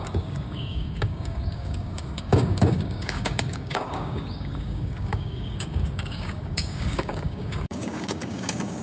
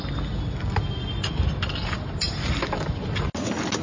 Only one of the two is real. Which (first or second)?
second